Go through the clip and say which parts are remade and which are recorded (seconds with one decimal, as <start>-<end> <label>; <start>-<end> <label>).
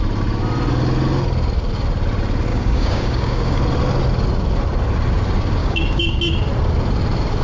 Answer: 0.0-2.5 recorded; 2.5-3.6 remade; 3.6-5.6 recorded; 5.6-6.2 remade; 6.2-7.4 recorded